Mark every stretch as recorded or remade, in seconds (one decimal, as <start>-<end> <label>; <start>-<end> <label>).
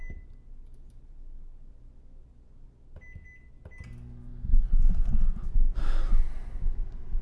0.0-7.2 recorded